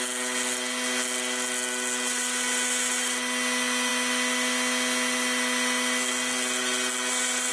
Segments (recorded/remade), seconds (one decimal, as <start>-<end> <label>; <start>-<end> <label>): 0.0-7.5 recorded